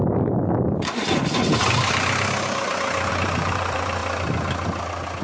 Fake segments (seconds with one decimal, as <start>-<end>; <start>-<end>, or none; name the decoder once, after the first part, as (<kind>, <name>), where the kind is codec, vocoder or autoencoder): 3.1-4.0 (vocoder, BigVGAN v2)